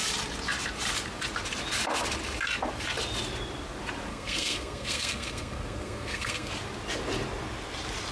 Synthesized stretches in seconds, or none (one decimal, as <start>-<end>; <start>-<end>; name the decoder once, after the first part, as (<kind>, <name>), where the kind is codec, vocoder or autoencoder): 4.1-6.5 (codec, SNAC)